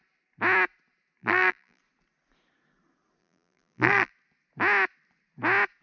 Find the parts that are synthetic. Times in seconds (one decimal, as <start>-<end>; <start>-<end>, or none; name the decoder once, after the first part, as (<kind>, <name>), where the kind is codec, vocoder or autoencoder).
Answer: 1.2-1.8 (vocoder, BigVGAN v2); 3.2-4.1